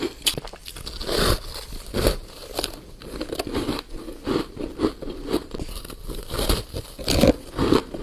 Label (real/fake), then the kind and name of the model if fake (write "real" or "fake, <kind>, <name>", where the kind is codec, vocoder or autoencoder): real